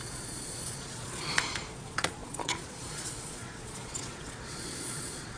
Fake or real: fake